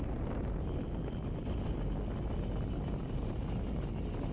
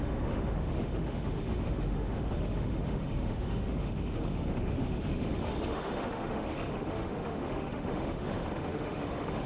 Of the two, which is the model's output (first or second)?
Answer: second